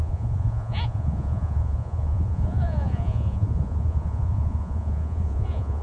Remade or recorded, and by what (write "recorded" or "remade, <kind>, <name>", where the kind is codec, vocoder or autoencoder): remade, vocoder, Vocos